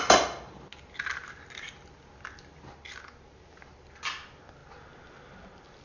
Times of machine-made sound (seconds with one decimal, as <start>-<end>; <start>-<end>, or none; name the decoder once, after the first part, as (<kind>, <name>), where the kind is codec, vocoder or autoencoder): none